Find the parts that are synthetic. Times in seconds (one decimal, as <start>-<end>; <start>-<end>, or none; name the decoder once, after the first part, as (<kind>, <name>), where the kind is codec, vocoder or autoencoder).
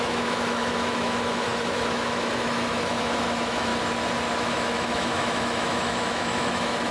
0.0-3.7 (autoencoder, DAC-VAE); 4.4-6.9